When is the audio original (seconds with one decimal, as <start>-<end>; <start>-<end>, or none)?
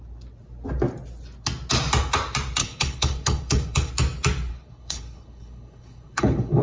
0.0-2.6; 3.9-4.5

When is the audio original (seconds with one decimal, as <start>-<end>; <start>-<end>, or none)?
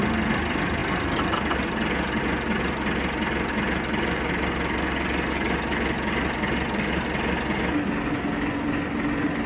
0.0-9.5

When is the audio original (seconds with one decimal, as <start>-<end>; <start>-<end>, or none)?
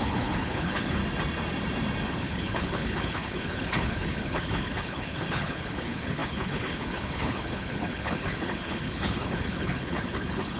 1.0-2.2